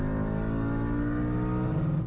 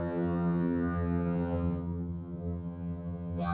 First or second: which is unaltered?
first